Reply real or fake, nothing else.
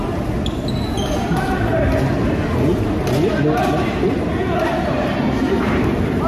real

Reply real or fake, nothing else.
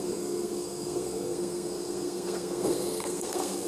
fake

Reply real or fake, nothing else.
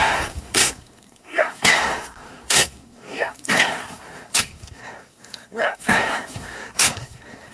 fake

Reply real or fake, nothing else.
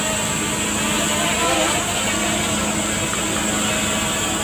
real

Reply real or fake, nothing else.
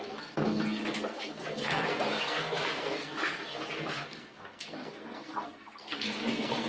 fake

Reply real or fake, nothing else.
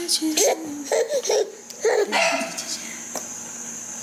real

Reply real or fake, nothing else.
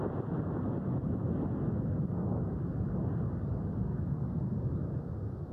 real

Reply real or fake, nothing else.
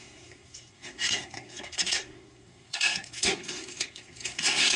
fake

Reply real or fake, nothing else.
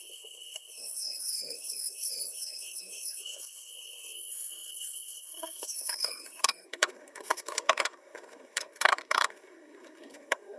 fake